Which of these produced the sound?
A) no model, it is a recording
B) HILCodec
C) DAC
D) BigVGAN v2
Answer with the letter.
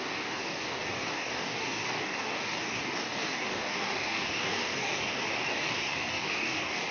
C